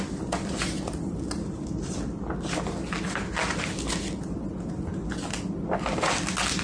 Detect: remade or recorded recorded